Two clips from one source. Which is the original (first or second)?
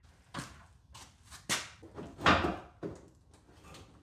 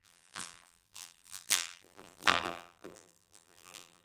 first